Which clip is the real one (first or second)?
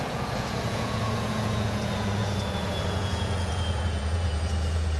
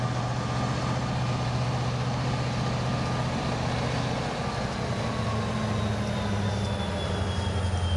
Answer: second